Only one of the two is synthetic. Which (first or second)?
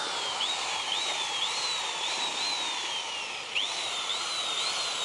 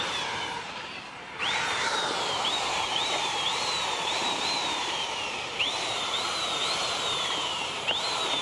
second